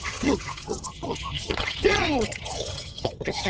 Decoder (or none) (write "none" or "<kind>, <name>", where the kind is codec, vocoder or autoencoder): vocoder, HiFi-GAN